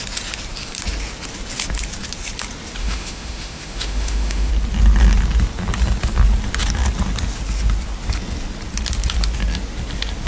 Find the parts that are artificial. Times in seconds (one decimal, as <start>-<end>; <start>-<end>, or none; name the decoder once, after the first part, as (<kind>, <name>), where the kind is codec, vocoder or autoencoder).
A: 2.8-4.5 (autoencoder, DAC-VAE)